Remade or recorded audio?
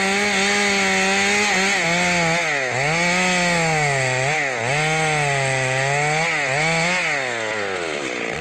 recorded